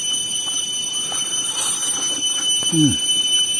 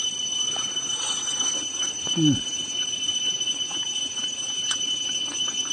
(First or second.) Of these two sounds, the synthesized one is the second